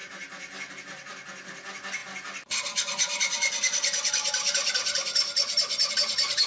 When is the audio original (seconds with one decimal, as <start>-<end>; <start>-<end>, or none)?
0.0-6.5